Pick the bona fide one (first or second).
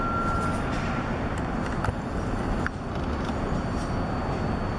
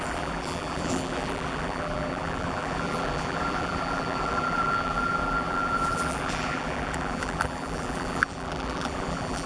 first